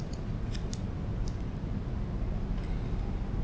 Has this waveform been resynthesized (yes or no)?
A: no